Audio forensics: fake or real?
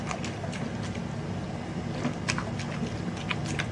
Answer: real